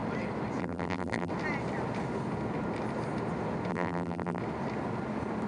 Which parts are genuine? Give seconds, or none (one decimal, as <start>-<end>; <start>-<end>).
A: 0.0-0.6; 1.3-3.7; 4.4-5.5